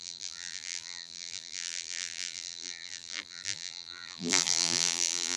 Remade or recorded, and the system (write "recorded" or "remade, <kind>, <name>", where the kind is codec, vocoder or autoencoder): remade, vocoder, BigVGAN v2